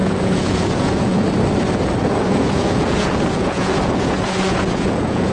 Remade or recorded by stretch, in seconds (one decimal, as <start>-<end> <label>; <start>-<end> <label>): 0.0-1.2 remade; 1.2-2.0 recorded; 2.0-5.3 remade